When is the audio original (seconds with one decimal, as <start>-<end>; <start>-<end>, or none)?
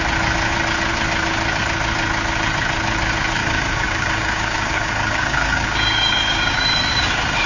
0.0-3.4; 7.1-7.5